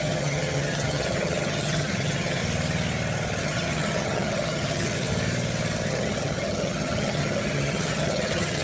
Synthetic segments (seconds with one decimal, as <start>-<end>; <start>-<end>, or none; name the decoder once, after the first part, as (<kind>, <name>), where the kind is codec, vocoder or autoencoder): 0.0-2.4 (vocoder, HiFi-GAN); 3.4-5.1; 5.9-8.6